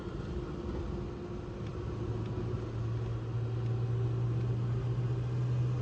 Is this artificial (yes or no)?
no